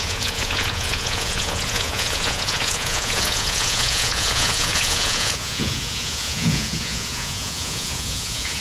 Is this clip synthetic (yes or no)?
yes